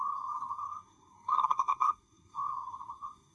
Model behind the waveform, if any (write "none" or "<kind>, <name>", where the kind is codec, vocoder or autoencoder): codec, SNAC